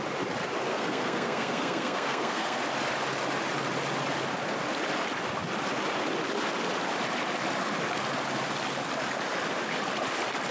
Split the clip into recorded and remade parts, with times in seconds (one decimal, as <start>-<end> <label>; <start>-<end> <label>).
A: 0.0-0.7 recorded; 0.7-2.6 remade; 2.6-10.5 recorded